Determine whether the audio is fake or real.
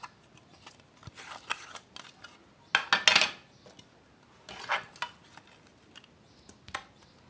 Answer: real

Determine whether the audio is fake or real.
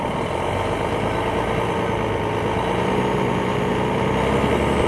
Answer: real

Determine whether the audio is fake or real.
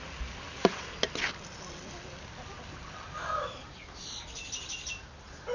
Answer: real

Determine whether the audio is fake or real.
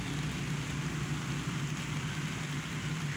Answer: real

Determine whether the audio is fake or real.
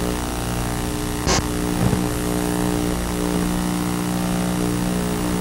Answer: real